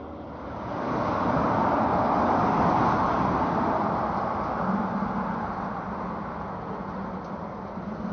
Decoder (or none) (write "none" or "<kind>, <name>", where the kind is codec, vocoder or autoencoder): none